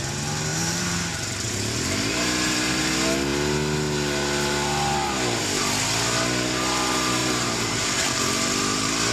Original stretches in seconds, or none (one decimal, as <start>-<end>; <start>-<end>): 0.0-0.5; 2.8-7.2; 7.8-9.1